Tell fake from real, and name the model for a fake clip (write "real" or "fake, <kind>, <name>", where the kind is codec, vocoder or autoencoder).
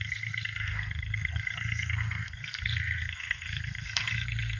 fake, codec, SNAC